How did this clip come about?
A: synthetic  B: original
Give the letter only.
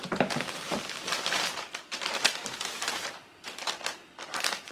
A